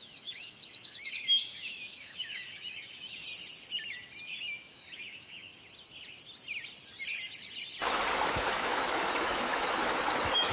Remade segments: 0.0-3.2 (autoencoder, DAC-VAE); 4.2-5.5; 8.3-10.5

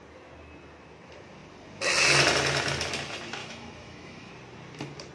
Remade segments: 3.4-4.3 (autoencoder, DAC-VAE)